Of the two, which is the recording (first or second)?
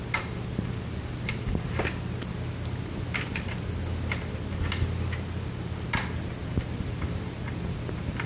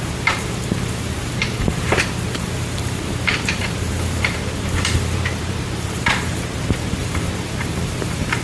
first